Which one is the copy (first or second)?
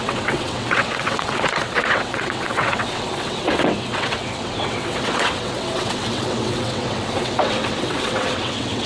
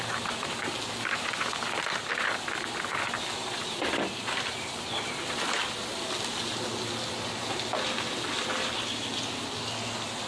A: first